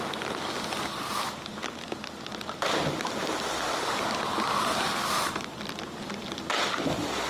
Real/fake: real